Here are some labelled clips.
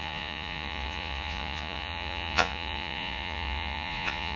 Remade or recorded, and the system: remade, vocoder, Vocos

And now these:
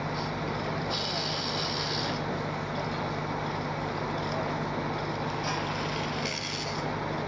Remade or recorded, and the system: recorded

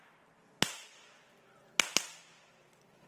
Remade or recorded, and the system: recorded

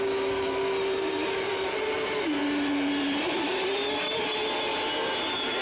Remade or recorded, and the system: recorded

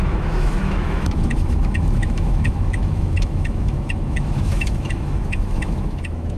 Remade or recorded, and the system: remade, autoencoder, DAC-VAE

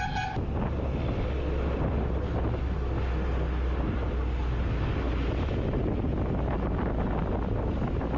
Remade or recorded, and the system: recorded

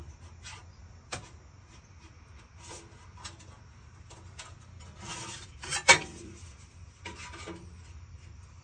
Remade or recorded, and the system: recorded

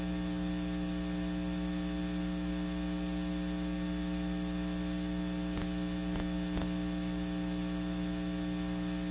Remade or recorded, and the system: recorded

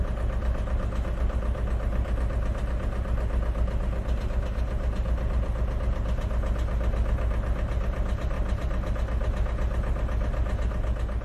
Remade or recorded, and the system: recorded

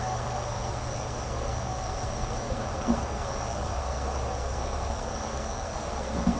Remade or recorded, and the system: remade, codec, SNAC